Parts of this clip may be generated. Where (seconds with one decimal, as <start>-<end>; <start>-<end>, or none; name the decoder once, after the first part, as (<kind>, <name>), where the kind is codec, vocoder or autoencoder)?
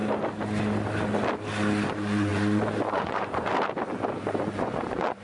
1.9-3.5 (vocoder, Vocos); 4.4-5.2